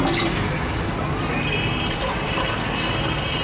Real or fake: real